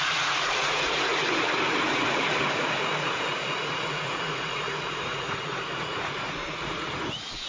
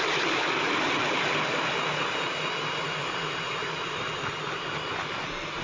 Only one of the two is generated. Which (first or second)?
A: first